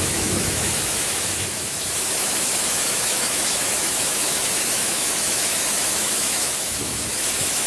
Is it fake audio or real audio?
fake